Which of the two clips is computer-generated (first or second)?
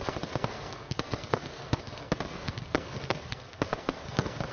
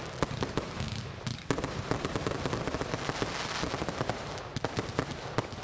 first